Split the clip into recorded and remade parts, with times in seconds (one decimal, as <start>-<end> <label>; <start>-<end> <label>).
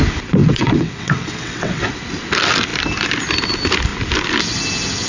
0.0-0.4 recorded; 0.4-1.8 remade; 1.8-5.1 recorded